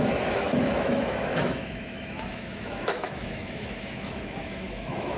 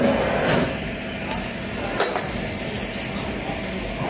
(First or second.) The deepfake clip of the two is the first